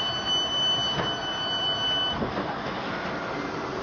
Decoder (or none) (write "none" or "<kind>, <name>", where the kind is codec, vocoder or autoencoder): none